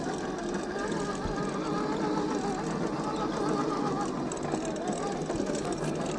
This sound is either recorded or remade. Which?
recorded